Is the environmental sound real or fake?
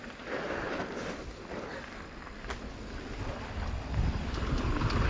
real